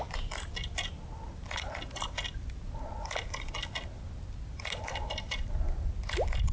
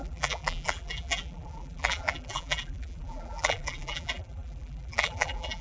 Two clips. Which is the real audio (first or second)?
first